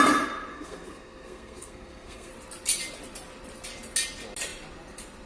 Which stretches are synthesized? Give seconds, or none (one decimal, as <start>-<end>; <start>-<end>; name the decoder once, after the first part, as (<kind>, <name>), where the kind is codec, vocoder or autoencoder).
0.5-2.3 (codec, SNAC)